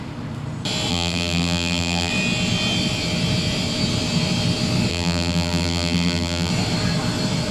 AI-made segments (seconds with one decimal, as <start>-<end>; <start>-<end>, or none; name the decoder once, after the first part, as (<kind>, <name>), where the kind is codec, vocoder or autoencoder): 0.9-2.1 (vocoder, BigVGAN v2); 4.9-6.5